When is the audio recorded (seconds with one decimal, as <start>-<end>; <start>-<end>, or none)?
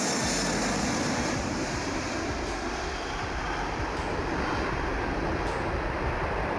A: 0.0-6.6